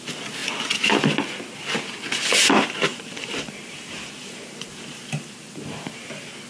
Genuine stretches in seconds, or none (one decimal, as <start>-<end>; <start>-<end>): 0.0-2.3; 6.1-6.5